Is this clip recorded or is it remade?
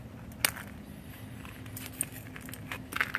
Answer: recorded